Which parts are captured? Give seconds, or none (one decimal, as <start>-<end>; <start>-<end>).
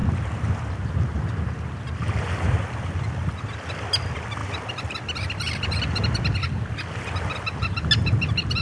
0.0-8.6